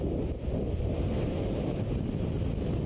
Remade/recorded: recorded